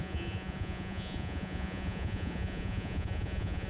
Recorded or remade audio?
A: remade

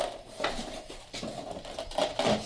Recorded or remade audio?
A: recorded